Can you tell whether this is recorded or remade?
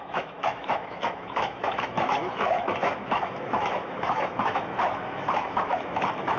remade